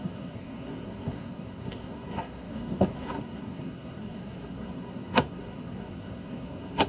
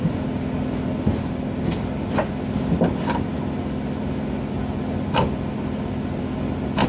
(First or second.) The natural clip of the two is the second